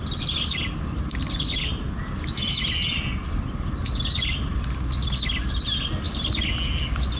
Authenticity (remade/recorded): recorded